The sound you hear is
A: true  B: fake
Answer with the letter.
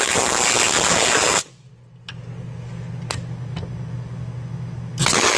A